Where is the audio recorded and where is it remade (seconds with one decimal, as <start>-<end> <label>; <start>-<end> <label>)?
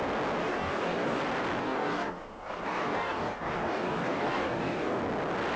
0.0-0.4 recorded; 0.4-1.2 remade; 1.2-1.6 recorded; 1.6-5.0 remade; 5.0-5.6 recorded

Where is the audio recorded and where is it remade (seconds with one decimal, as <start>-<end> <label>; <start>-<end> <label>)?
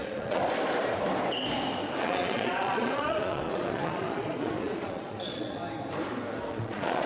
0.0-0.4 remade; 0.4-2.0 recorded; 2.0-5.6 remade; 5.6-6.5 recorded; 6.5-7.1 remade